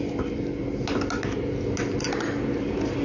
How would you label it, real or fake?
real